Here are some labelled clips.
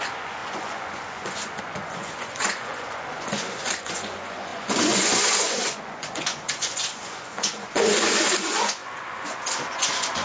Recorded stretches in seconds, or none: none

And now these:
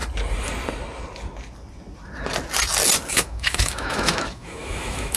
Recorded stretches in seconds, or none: 0.0-3.1

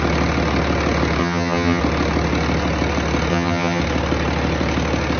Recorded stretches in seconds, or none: 0.0-1.2; 1.8-3.3; 3.8-5.2

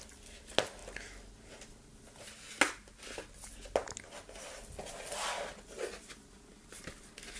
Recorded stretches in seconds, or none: 0.0-7.4

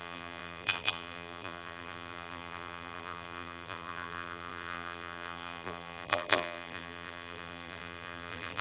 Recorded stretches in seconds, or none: none

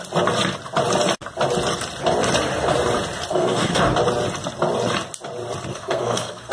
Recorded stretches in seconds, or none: 0.0-3.3; 3.8-5.7

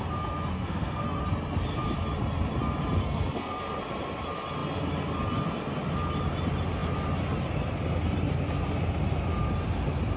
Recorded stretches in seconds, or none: 0.0-0.5; 1.2-3.0; 3.6-10.2